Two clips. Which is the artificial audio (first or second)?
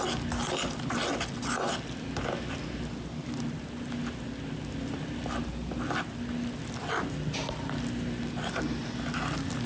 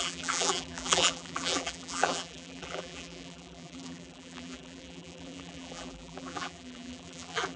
second